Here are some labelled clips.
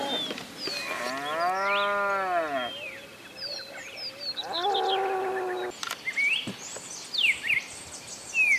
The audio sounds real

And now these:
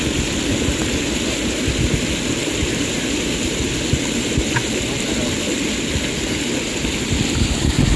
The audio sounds real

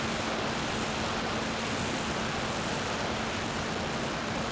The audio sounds real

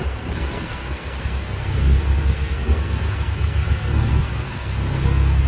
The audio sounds fake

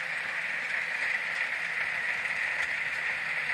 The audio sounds real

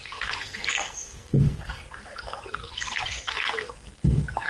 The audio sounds fake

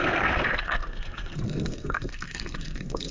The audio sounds fake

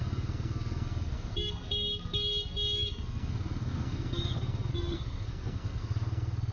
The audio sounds fake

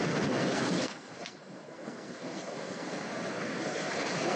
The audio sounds fake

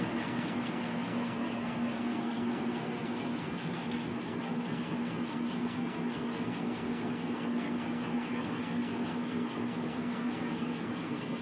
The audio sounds fake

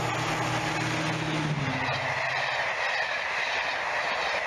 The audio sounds real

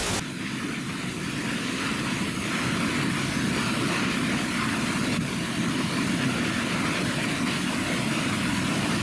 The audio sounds real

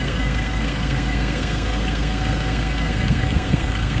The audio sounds fake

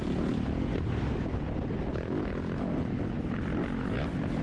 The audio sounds real